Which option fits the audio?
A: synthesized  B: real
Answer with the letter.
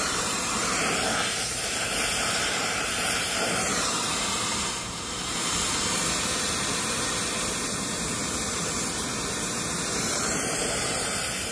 A